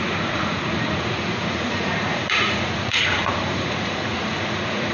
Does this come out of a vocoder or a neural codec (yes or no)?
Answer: yes